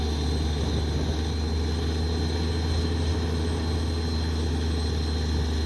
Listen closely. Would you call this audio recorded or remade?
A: recorded